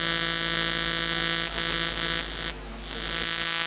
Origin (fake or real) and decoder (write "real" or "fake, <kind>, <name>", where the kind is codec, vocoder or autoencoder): real